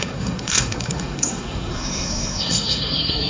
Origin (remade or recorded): remade